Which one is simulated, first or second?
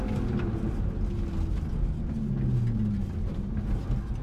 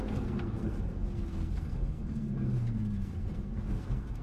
second